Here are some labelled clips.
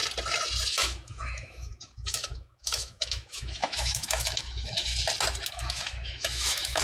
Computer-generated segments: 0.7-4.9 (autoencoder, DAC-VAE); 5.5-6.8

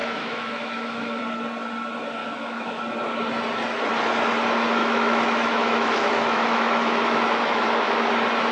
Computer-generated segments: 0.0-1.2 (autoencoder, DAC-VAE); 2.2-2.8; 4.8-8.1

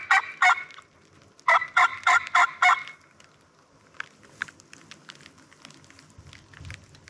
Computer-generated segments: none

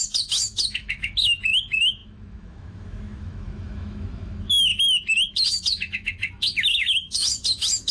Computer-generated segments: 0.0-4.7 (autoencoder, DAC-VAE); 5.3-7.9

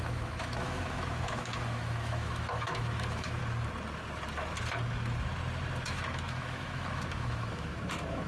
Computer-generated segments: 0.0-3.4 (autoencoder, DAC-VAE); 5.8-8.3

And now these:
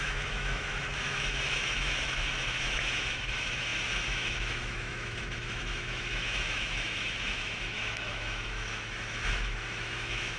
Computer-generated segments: 0.0-10.4 (autoencoder, DAC-VAE)